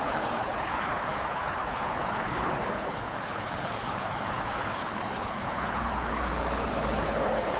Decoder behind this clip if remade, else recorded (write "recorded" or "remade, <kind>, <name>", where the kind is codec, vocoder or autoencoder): remade, codec, HILCodec